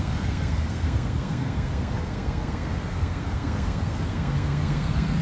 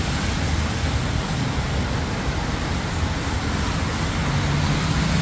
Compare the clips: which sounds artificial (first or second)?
first